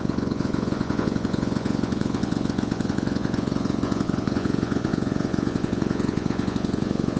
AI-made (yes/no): yes